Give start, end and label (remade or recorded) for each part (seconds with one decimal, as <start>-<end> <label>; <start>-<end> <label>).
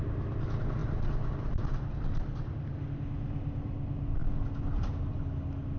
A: 0.0-5.8 recorded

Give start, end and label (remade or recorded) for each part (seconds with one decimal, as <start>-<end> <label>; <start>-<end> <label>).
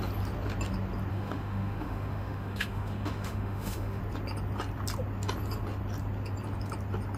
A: 0.0-1.1 recorded; 1.1-4.0 remade; 4.0-7.2 recorded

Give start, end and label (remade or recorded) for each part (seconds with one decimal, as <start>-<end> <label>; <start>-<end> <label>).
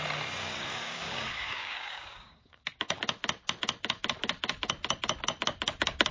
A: 0.0-0.4 recorded; 0.4-3.0 remade; 3.0-6.1 recorded